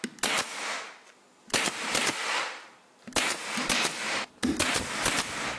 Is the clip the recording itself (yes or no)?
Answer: yes